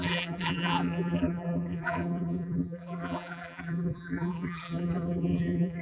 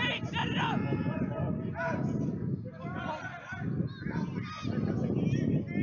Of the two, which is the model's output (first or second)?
first